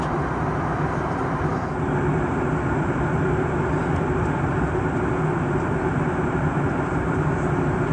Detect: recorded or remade recorded